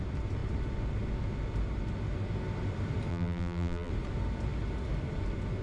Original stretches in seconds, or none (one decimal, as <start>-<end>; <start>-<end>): 0.0-3.1; 3.9-5.6